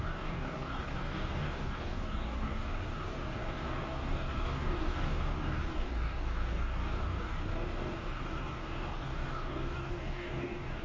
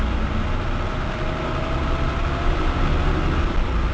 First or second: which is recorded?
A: second